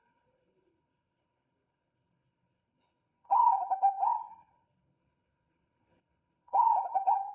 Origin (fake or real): fake